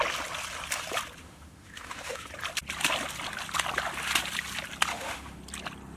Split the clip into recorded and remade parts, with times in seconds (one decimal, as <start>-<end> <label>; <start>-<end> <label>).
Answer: 0.0-1.2 recorded; 1.2-2.3 remade; 2.3-4.9 recorded; 4.9-5.4 remade; 5.4-6.0 recorded